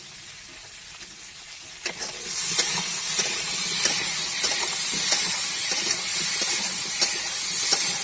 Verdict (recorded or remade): recorded